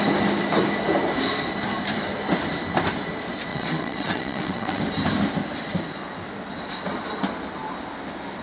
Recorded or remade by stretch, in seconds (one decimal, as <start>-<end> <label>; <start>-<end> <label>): 0.0-3.5 recorded; 3.5-4.8 remade; 4.8-8.4 recorded